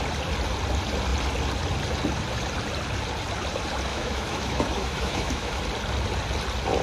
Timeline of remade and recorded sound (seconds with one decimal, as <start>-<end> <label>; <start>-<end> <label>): 0.0-3.9 recorded; 3.9-5.6 remade; 5.6-6.8 recorded